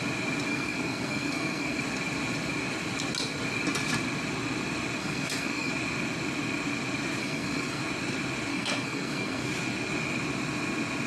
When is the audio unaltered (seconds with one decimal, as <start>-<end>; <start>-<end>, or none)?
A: 0.0-0.5; 1.8-5.0; 5.7-7.2; 7.8-8.5; 9.5-11.1